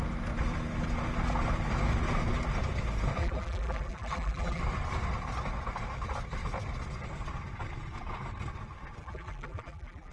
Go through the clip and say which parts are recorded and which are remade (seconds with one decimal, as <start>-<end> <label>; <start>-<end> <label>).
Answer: 0.0-3.2 recorded; 3.2-4.6 remade; 4.6-9.0 recorded; 9.0-10.1 remade